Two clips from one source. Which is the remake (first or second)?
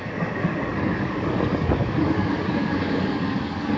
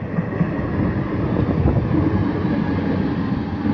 first